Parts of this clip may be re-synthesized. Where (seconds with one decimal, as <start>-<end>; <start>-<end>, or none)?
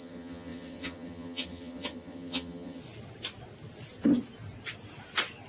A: 0.0-2.8